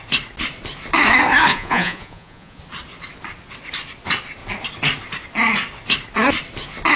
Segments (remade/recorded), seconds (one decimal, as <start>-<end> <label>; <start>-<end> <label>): 0.0-1.5 recorded; 1.5-2.6 remade; 2.6-7.0 recorded